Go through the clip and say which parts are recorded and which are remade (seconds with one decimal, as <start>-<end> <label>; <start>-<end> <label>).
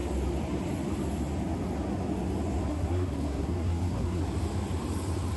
0.0-2.7 recorded; 2.7-4.2 remade; 4.2-5.4 recorded